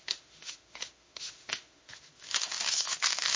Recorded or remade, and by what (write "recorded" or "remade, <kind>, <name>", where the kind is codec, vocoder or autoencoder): remade, autoencoder, DAC-VAE